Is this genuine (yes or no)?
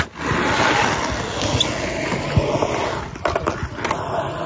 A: yes